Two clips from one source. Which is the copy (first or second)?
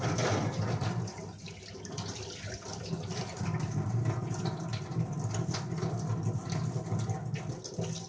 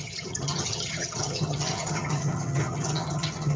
second